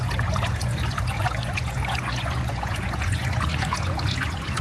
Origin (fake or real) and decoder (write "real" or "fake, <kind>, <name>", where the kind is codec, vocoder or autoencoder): fake, vocoder, Vocos